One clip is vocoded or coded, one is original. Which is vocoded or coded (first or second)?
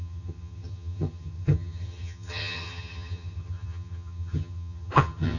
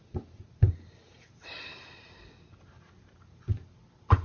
first